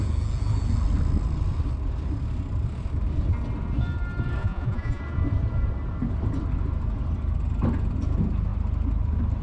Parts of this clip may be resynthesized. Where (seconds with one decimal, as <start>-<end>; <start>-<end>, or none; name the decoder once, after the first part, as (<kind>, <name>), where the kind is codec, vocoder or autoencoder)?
4.4-5.0 (vocoder, Vocos)

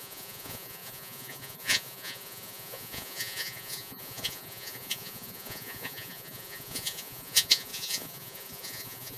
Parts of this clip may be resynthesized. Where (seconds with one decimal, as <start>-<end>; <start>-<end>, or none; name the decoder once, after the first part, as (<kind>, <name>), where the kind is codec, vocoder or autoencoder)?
0.0-9.2 (vocoder, Vocos)

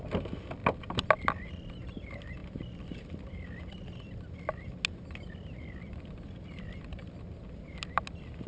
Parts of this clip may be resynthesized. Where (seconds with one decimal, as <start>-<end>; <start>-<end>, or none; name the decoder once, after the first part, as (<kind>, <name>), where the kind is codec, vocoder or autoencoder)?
none

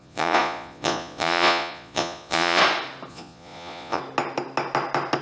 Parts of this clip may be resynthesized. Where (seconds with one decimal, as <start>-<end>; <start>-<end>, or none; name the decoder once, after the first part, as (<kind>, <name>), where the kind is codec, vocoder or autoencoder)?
0.0-2.6 (vocoder, Vocos); 3.1-4.0